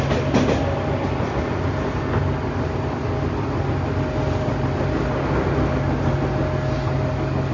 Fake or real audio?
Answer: real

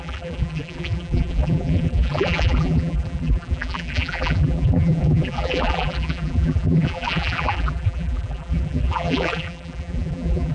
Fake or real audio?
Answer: fake